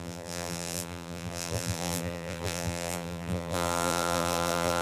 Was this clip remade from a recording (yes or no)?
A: yes